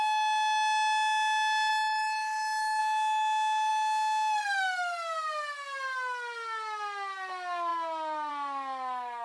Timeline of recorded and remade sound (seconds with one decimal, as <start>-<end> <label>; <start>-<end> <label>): 0.0-1.7 recorded; 1.7-2.8 remade; 2.8-9.2 recorded